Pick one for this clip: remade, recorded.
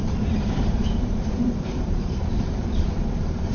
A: remade